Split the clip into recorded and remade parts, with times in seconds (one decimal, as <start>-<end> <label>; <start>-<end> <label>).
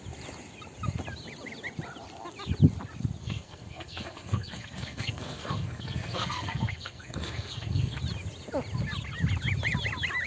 0.0-3.2 recorded; 3.2-8.0 remade; 8.0-10.3 recorded